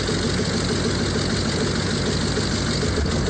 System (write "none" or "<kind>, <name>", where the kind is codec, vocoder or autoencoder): none